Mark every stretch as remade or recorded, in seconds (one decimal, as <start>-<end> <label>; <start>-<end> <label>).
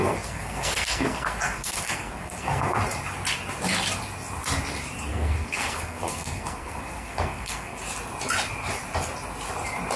0.0-2.8 remade; 2.8-5.1 recorded; 5.1-7.8 remade; 7.8-10.0 recorded